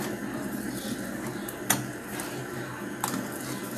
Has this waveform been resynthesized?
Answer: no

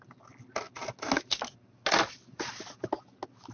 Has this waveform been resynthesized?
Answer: no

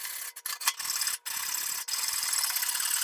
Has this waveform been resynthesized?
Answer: no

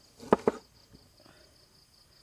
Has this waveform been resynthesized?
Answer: no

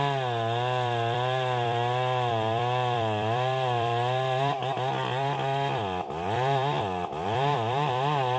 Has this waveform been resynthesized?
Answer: yes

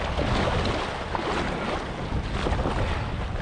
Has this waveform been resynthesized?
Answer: no